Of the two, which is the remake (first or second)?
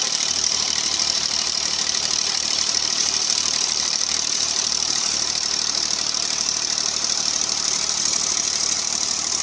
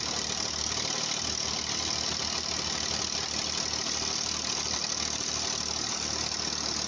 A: first